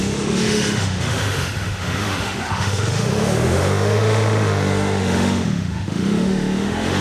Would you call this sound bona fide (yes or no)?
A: no